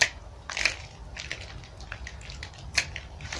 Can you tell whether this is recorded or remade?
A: recorded